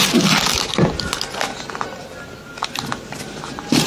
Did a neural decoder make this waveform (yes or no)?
no